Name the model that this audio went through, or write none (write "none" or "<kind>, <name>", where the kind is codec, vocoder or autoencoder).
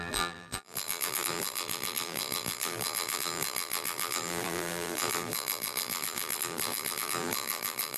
vocoder, BigVGAN v2